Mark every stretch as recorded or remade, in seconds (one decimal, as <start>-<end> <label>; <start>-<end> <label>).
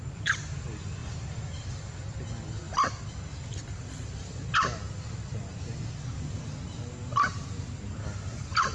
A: 0.0-1.0 recorded; 1.0-1.7 remade; 1.7-8.7 recorded